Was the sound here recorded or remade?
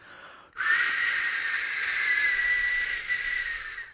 recorded